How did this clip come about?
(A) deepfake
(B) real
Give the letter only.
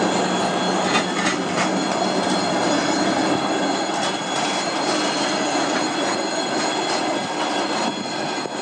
B